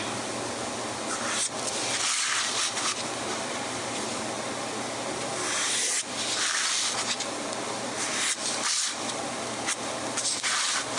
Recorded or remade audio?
recorded